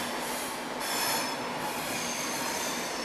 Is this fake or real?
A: real